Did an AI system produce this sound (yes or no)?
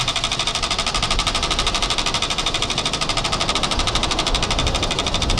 yes